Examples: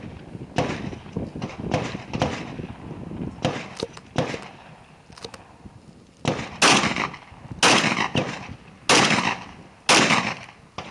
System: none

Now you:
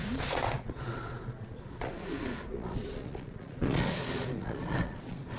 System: vocoder, Vocos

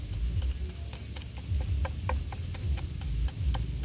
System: none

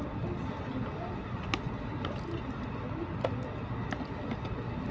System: none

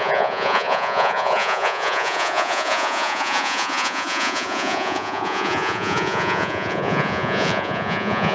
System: vocoder, Vocos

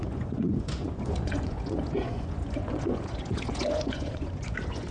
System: vocoder, Vocos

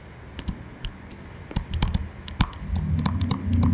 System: none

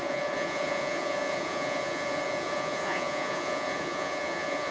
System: vocoder, Vocos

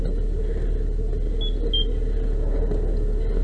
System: none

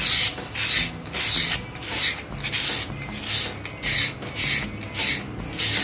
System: none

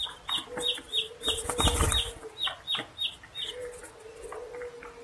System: none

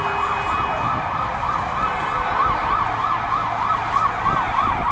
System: none